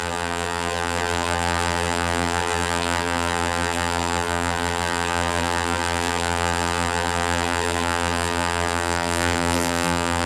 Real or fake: fake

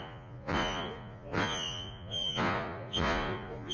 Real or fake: fake